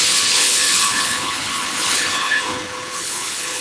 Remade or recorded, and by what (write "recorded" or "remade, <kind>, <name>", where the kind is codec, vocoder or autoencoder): remade, codec, HILCodec